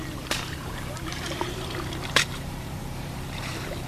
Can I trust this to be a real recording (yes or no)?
no